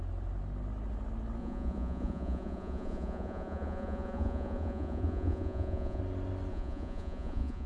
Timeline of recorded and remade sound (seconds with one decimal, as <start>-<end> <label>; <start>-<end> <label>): 0.0-1.4 recorded; 1.4-6.0 remade; 6.0-6.5 recorded; 6.5-7.7 remade